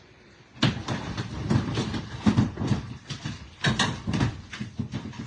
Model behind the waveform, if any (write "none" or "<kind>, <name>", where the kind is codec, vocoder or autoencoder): vocoder, BigVGAN v2